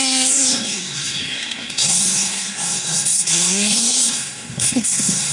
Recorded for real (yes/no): no